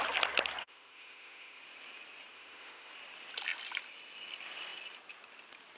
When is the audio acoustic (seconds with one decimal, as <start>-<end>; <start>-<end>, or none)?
0.0-0.6; 1.6-2.3; 2.9-5.8